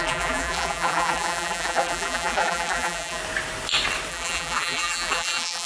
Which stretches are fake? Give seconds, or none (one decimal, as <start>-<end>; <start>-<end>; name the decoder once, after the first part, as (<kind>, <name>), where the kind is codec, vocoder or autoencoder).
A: 0.0-3.2 (vocoder, BigVGAN v2); 4.1-5.7